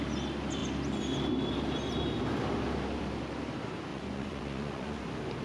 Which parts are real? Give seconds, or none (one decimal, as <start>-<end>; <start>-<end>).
0.0-3.9; 5.0-5.4